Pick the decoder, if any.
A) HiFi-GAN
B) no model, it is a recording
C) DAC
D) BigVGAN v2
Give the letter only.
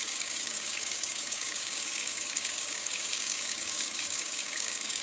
C